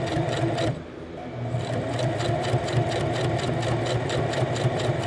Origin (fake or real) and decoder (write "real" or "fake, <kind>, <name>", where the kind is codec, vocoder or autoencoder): fake, vocoder, BigVGAN v2